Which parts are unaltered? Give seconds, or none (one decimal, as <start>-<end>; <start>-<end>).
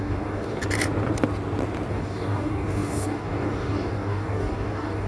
0.6-1.9